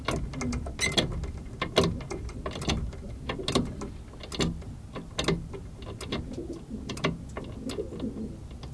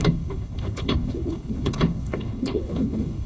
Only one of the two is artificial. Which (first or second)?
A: second